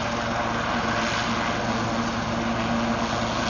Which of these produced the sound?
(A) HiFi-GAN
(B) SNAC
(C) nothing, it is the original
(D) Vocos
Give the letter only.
C